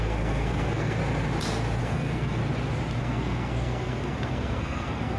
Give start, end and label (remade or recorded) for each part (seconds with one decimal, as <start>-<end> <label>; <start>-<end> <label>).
0.0-1.0 remade; 1.0-1.8 recorded; 1.8-2.4 remade; 2.4-3.0 recorded; 3.0-5.2 remade